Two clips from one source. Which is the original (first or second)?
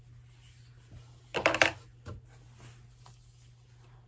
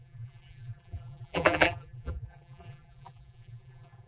first